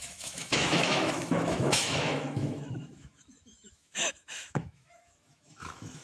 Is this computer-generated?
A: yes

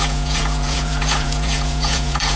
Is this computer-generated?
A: yes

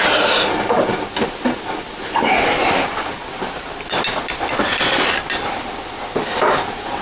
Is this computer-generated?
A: no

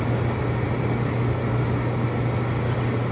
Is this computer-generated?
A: no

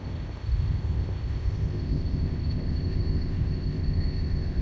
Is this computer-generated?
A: yes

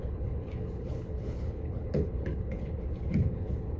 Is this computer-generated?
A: yes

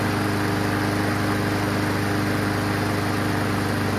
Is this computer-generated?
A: no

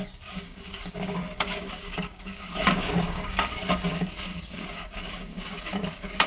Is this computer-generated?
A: yes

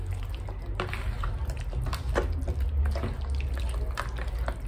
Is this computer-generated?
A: no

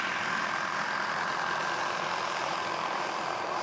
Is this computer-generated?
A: no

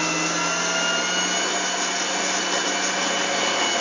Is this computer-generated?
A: no